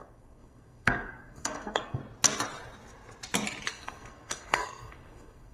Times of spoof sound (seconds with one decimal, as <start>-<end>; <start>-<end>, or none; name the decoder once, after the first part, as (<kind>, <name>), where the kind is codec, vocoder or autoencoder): 0.0-2.0 (codec, SNAC); 3.7-5.5